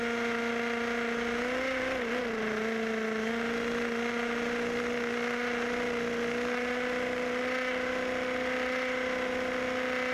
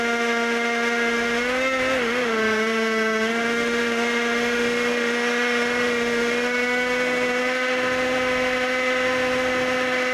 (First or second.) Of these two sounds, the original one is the first